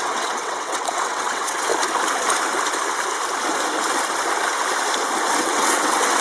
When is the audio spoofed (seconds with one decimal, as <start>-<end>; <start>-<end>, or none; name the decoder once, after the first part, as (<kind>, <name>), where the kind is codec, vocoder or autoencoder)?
0.0-1.7 (vocoder, WaveNeXt); 5.4-6.2